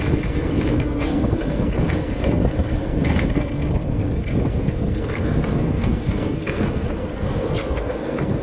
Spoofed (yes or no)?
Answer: yes